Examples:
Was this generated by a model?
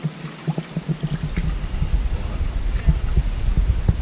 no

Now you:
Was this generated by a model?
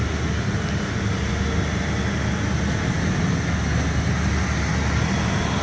no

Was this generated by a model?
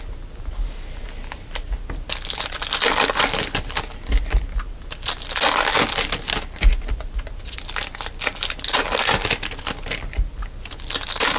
no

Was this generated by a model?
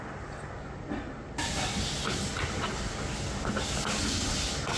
no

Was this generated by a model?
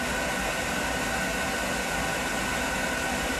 no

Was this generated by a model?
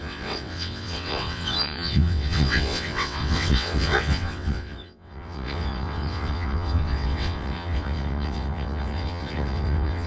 yes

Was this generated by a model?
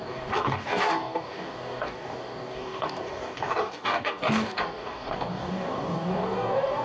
yes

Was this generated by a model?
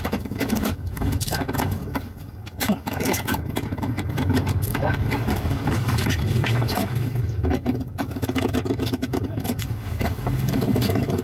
yes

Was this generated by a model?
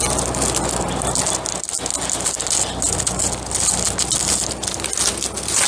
no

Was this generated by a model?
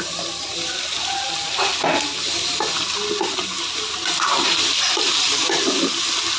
no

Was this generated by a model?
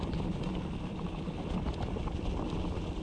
yes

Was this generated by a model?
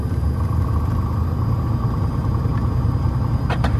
yes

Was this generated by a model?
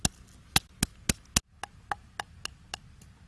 no